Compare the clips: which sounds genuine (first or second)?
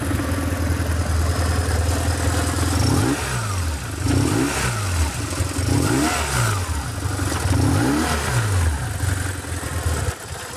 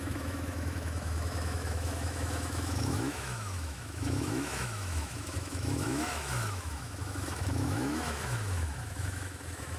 first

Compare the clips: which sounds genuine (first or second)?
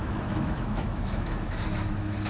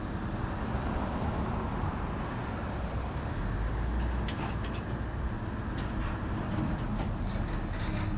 second